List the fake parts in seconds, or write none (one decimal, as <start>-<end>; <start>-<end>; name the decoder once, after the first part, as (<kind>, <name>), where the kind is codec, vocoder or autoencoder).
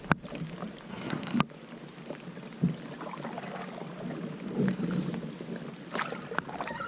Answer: 0.9-1.4 (codec, SNAC)